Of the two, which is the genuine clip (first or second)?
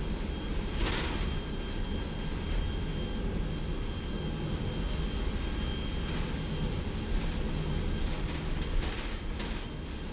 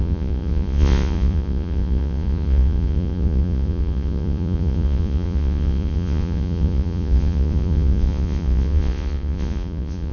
first